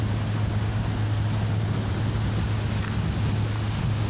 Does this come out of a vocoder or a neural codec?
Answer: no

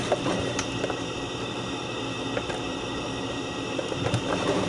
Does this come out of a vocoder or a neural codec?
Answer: yes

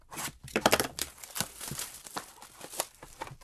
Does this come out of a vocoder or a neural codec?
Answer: yes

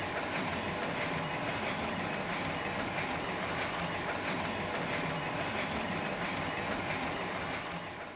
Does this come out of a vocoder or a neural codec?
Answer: no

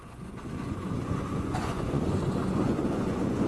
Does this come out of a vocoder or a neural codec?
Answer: yes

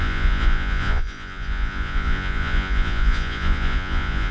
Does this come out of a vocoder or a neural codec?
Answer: yes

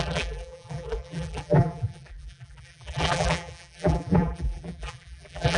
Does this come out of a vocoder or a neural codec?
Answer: yes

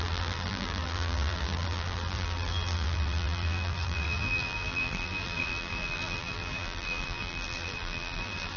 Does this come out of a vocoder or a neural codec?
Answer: yes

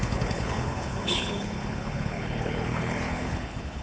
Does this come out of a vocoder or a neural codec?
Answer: yes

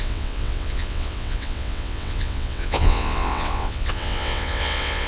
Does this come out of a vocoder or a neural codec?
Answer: yes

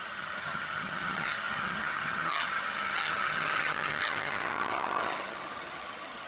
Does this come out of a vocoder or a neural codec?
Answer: yes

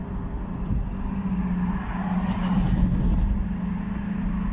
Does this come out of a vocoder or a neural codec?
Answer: no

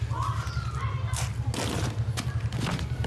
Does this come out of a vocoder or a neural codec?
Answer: no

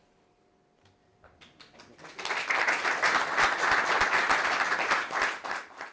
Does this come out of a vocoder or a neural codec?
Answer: no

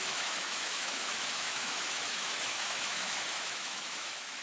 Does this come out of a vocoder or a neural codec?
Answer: yes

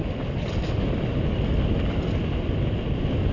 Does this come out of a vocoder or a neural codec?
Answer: no